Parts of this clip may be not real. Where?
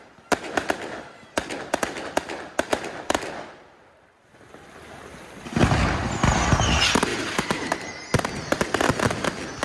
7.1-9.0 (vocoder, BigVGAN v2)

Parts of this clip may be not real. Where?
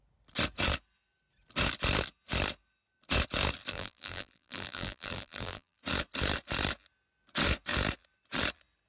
3.7-5.8 (vocoder, BigVGAN v2)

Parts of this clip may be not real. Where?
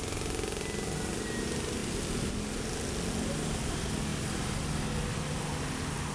none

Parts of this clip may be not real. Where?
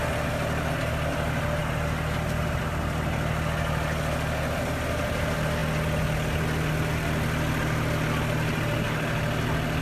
1.6-2.6 (vocoder, BigVGAN v2)